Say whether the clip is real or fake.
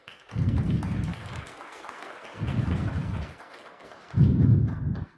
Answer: fake